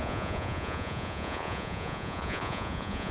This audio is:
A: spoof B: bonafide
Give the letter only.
A